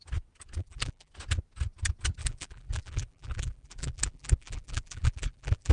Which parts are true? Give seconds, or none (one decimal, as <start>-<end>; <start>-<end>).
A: 0.0-0.6; 1.1-2.2

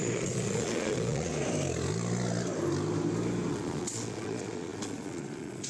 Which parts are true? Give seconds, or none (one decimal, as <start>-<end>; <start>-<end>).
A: 1.3-3.5

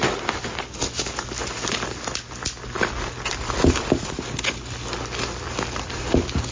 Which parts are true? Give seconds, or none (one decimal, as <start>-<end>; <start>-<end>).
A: 0.0-6.5

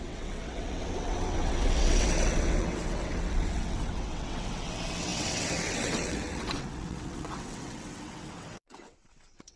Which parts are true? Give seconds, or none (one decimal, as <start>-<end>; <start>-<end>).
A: none